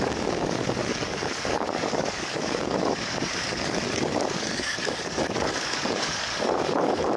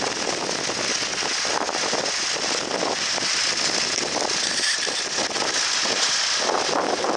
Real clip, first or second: second